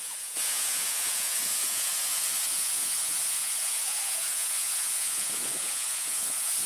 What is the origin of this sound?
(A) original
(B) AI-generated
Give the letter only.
B